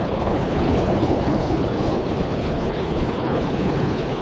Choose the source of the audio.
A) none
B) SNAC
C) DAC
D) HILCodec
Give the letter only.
D